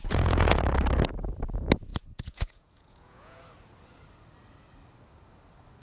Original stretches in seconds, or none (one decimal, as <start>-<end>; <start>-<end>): 0.6-1.9; 3.4-5.8